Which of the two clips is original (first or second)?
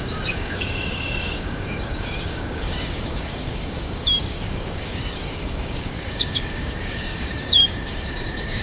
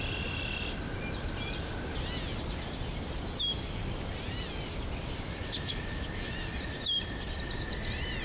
second